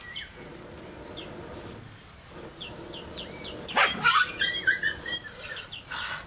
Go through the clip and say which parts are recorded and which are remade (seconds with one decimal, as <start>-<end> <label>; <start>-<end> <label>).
0.0-0.5 remade; 0.5-4.3 recorded; 4.3-5.1 remade; 5.1-6.3 recorded